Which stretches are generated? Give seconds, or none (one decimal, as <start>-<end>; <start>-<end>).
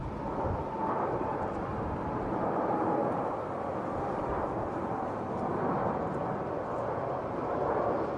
0.0-1.7; 2.4-8.2